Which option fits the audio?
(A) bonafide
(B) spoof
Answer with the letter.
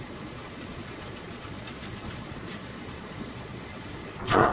B